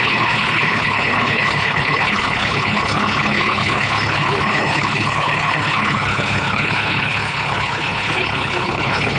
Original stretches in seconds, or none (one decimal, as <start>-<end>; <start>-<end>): none